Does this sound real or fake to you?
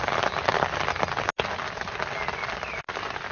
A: real